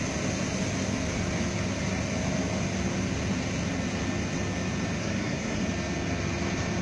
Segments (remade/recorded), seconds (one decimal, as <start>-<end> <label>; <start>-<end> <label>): 0.0-5.0 recorded; 5.0-5.6 remade; 5.6-6.8 recorded